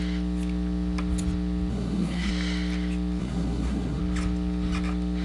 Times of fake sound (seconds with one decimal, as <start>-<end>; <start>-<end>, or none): 1.7-2.3; 3.2-4.0